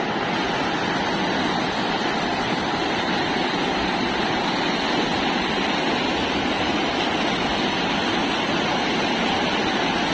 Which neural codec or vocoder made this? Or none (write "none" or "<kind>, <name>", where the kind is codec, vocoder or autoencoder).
none